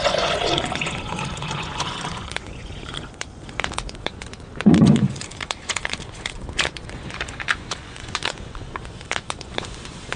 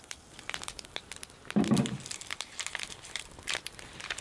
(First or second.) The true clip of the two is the second